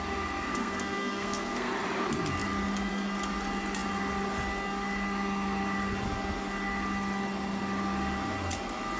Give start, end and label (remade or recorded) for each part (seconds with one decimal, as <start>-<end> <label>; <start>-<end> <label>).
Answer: 0.0-0.5 recorded; 0.5-1.7 remade; 1.7-9.0 recorded

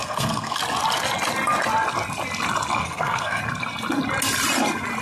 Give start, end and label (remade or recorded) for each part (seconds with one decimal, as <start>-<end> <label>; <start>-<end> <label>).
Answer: 0.0-0.6 remade; 0.6-2.8 recorded; 2.8-3.4 remade; 3.4-5.0 recorded

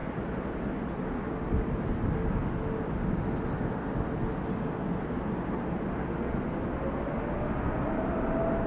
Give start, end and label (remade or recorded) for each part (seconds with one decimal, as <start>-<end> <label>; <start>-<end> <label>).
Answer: 0.0-8.7 recorded